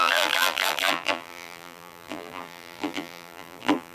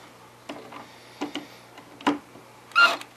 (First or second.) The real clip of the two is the second